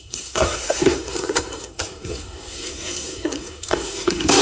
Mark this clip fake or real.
fake